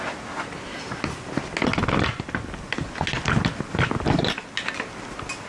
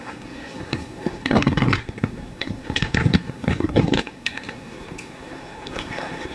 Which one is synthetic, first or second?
second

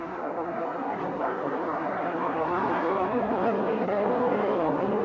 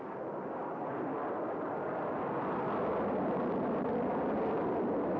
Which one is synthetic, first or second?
first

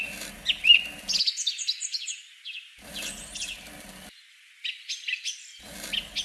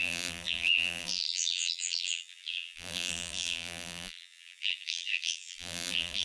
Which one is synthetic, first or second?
second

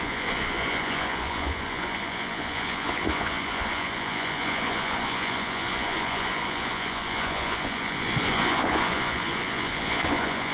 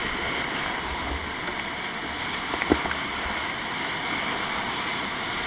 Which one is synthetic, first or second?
first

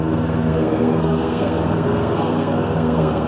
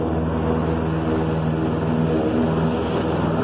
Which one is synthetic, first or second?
first